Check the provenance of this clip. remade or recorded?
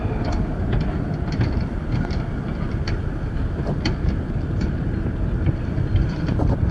recorded